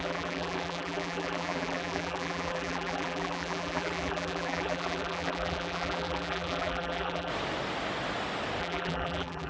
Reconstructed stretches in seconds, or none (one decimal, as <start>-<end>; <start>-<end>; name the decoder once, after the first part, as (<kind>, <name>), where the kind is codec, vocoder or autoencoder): 0.0-7.3 (vocoder, BigVGAN v2); 8.6-9.5